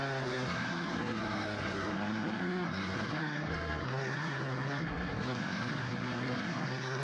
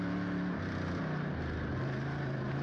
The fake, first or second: first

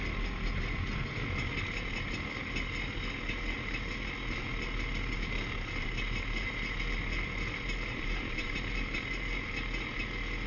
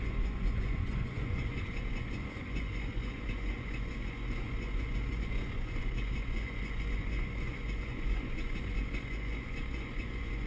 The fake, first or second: second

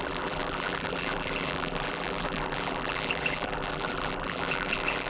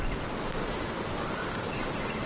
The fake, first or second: first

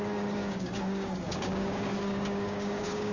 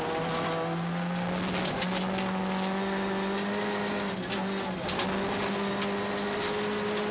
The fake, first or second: first